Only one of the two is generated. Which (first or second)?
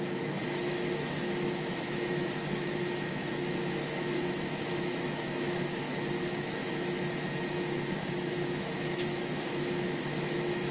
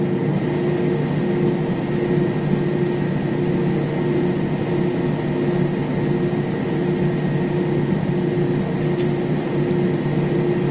first